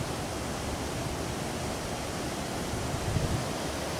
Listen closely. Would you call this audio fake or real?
real